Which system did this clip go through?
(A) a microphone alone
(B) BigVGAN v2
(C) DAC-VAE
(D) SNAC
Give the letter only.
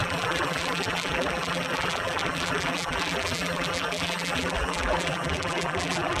B